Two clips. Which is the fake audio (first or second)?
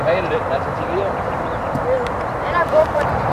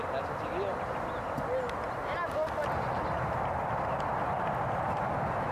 first